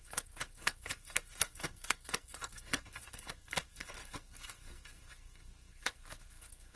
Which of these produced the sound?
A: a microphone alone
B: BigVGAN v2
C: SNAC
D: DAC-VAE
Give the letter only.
C